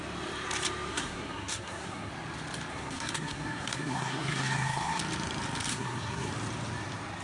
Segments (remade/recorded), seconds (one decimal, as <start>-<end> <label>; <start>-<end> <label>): 0.0-0.9 recorded; 0.9-2.1 remade; 2.1-2.7 recorded; 2.7-5.0 remade; 5.0-5.7 recorded; 5.7-6.3 remade; 6.3-7.2 recorded